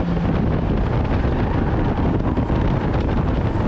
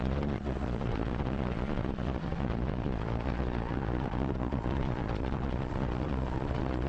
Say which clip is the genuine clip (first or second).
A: first